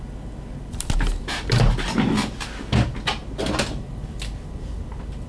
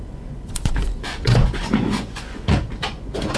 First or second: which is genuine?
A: first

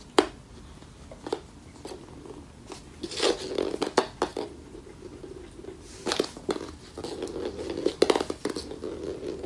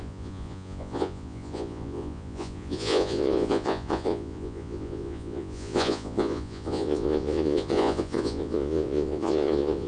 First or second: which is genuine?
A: first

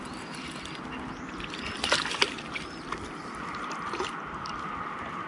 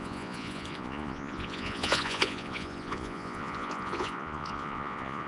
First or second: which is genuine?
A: first